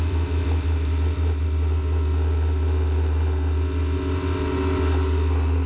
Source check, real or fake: real